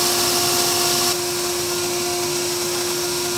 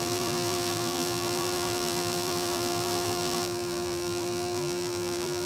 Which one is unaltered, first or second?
first